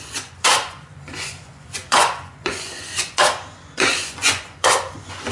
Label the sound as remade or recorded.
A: remade